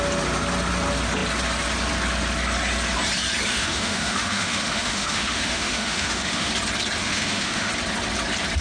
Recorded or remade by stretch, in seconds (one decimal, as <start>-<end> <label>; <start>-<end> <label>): 0.0-3.5 recorded; 3.5-6.5 remade; 6.5-7.0 recorded; 7.0-7.7 remade; 7.7-8.6 recorded